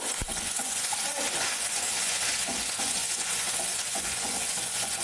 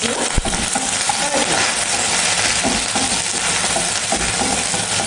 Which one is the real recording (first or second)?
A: second